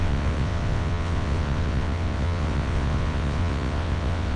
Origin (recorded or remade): remade